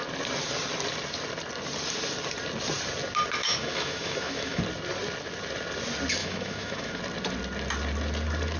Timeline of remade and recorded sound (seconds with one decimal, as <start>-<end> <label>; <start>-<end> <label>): 0.0-3.4 recorded; 3.4-4.6 remade; 4.6-6.2 recorded; 6.2-7.0 remade; 7.0-8.6 recorded